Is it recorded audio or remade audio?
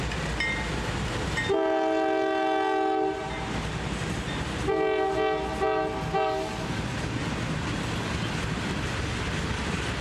recorded